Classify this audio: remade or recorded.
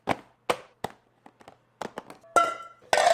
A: recorded